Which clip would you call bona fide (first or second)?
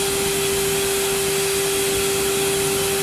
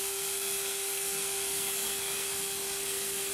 first